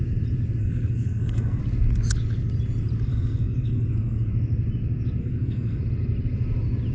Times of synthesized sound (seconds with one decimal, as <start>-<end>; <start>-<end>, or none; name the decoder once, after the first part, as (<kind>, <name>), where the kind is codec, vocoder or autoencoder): 0.6-1.6 (codec, SNAC); 3.1-4.3; 5.2-5.8